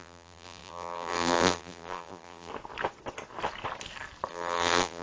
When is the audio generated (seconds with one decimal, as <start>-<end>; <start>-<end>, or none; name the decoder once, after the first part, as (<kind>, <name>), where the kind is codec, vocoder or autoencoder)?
0.0-2.5 (vocoder, BigVGAN v2); 4.3-5.0